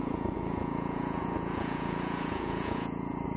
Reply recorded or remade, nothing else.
remade